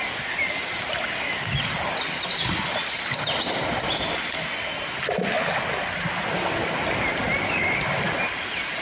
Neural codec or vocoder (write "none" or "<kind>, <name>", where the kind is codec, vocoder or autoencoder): none